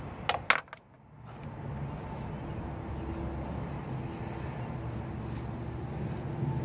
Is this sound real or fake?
real